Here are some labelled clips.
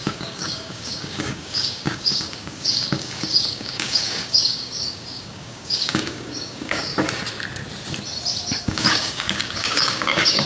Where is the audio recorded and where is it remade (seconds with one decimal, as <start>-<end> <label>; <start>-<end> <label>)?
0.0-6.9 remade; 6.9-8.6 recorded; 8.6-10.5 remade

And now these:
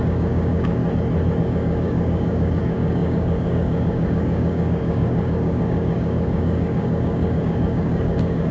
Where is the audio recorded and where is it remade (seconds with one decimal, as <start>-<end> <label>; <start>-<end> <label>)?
0.0-0.8 remade; 0.8-1.4 recorded; 1.4-8.5 remade

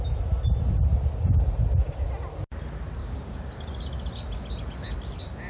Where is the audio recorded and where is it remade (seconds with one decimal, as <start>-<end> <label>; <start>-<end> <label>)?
0.0-3.0 recorded; 3.0-3.6 remade; 3.6-5.5 recorded

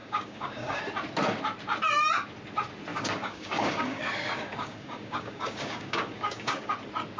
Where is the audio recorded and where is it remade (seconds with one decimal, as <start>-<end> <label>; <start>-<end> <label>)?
0.0-0.8 remade; 0.8-2.9 recorded; 2.9-6.7 remade; 6.7-7.2 recorded

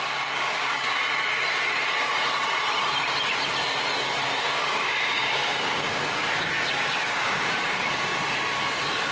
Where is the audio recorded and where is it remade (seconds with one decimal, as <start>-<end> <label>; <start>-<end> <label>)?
0.0-0.9 remade; 0.9-4.4 recorded; 4.4-8.1 remade; 8.1-9.1 recorded

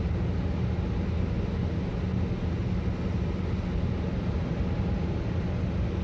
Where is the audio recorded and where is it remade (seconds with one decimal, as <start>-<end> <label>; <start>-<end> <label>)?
0.0-6.0 recorded